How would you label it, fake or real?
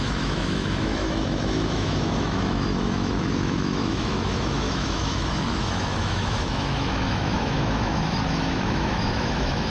fake